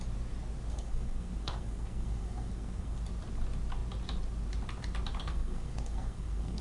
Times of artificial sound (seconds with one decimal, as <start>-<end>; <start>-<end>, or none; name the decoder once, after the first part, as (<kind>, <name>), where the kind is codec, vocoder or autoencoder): 0.7-3.0 (codec, SNAC); 5.2-6.6